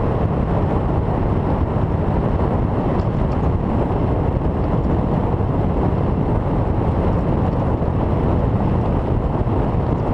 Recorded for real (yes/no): yes